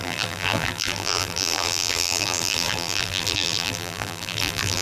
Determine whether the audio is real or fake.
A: fake